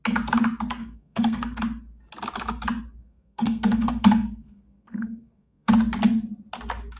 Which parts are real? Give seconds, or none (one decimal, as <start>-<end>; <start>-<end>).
0.0-0.8; 1.6-3.0; 5.7-7.0